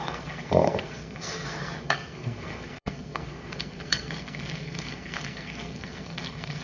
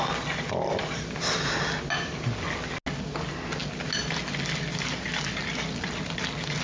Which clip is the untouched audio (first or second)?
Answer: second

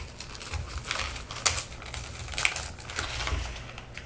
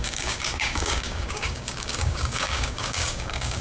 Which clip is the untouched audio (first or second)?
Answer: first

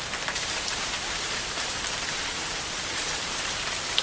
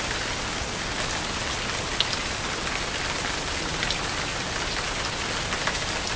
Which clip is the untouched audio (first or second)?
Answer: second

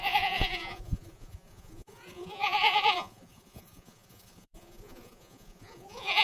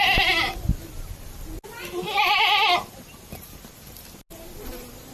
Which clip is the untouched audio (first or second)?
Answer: second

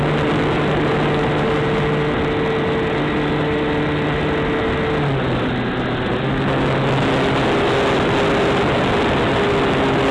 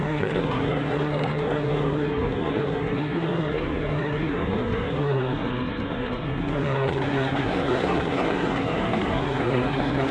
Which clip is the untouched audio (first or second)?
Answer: first